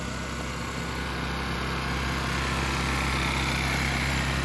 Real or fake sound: real